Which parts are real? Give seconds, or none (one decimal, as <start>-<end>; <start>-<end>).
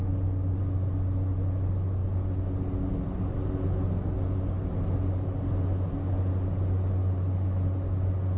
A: 0.0-8.4